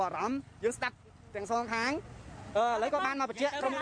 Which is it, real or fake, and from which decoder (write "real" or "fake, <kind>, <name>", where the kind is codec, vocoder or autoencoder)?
real